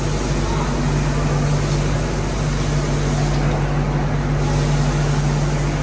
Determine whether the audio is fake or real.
real